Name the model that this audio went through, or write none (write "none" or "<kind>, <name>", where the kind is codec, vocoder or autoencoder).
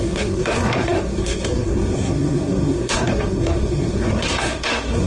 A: codec, SNAC